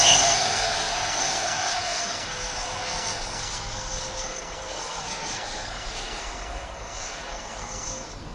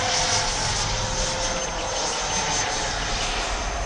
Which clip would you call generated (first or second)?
first